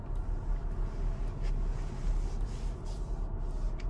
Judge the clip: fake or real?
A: real